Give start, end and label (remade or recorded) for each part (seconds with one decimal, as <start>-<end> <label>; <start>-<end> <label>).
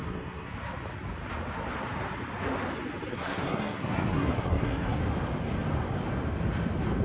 0.0-0.5 remade; 0.5-3.1 recorded; 3.1-5.0 remade; 5.0-7.0 recorded